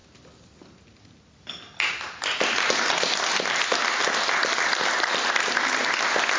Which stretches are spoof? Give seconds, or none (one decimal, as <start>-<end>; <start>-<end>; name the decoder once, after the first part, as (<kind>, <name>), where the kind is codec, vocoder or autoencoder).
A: none